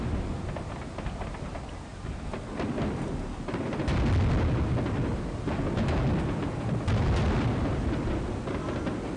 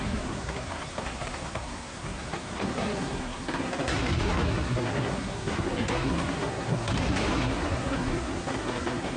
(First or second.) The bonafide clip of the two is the first